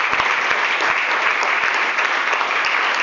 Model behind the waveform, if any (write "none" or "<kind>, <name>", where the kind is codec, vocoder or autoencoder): none